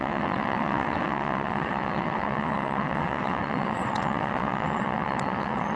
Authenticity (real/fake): fake